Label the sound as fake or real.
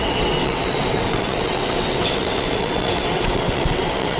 fake